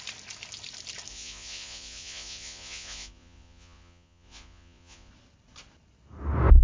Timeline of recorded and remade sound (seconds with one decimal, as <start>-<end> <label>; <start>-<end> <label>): 0.0-1.1 recorded; 1.1-5.1 remade; 5.1-6.6 recorded